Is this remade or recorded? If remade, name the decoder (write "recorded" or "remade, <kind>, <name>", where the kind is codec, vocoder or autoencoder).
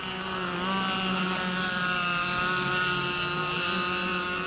recorded